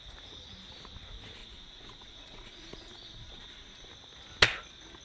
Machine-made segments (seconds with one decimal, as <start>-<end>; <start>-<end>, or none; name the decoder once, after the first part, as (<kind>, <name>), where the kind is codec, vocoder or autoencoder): 1.4-3.9 (vocoder, Vocos)